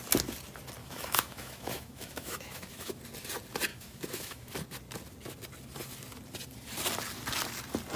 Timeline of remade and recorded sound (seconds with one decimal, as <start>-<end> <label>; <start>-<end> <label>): 0.0-0.8 recorded; 0.8-3.0 remade; 3.0-3.7 recorded; 3.7-4.5 remade; 4.5-8.0 recorded